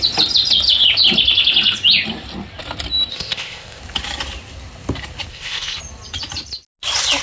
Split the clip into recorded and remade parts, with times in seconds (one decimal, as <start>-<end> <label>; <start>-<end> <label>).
0.0-3.1 recorded; 3.1-3.8 remade; 3.8-5.3 recorded; 5.3-5.8 remade; 5.8-7.2 recorded